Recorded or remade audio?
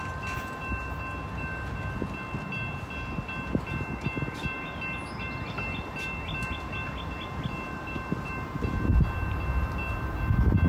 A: recorded